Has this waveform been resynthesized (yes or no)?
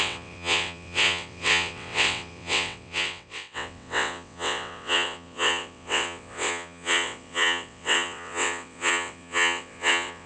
yes